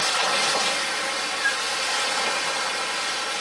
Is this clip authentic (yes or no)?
yes